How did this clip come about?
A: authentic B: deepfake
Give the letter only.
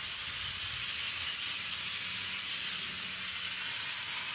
A